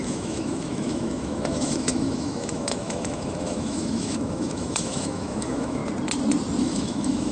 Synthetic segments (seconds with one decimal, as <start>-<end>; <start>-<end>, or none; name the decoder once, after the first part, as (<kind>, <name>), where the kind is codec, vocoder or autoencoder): 0.0-5.8 (autoencoder, DAC-VAE); 6.6-7.3